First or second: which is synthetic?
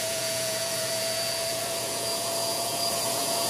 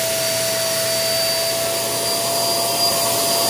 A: first